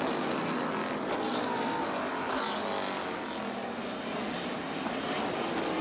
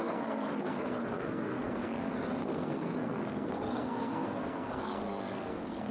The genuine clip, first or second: first